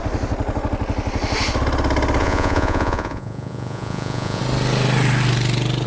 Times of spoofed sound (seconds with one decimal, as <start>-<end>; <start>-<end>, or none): 2.2-4.4